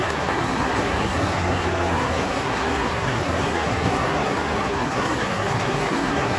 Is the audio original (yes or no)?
no